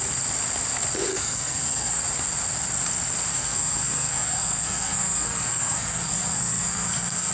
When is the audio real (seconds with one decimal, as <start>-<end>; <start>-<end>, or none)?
0.0-1.1; 2.0-3.3